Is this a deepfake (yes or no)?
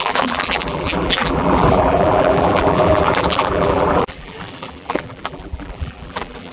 yes